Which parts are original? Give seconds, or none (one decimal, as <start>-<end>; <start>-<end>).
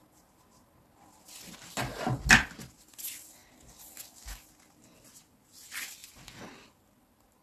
0.0-7.4